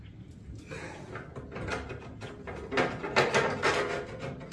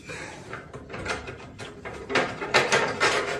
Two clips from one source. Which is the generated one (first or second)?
second